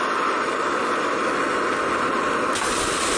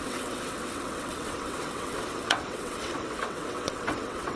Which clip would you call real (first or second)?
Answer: first